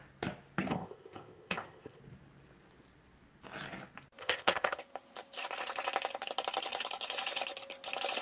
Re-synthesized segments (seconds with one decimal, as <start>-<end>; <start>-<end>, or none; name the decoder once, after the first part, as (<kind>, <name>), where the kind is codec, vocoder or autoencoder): 0.7-2.0 (codec, ZipCodec); 4.2-4.8